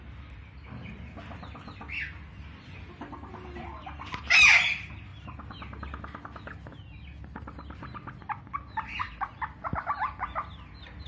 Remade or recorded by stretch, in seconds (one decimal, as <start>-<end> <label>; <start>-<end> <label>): 0.0-11.1 recorded